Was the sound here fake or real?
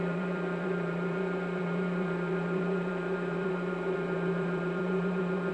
fake